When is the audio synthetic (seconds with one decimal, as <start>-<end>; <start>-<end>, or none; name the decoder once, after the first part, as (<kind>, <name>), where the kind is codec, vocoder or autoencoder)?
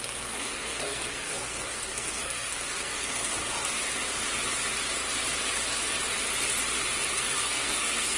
0.0-3.3 (codec, SNAC); 7.1-8.2